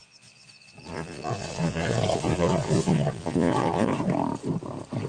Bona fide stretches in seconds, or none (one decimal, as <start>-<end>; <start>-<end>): 3.9-5.1